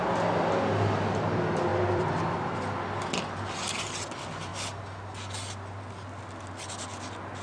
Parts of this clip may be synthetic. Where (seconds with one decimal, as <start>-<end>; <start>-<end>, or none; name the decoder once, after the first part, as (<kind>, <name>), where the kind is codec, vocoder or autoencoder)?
1.7-2.2 (vocoder, BigVGAN v2)